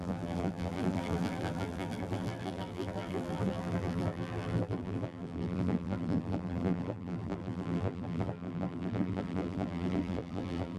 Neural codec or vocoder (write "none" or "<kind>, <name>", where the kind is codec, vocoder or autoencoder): vocoder, BigVGAN v2